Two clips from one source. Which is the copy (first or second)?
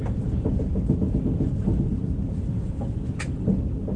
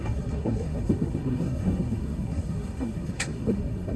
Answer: second